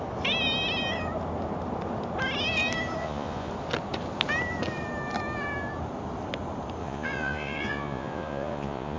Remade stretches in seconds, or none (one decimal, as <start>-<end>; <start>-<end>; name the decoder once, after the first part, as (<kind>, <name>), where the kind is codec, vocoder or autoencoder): 3.0-3.5 (vocoder, Vocos); 6.8-9.0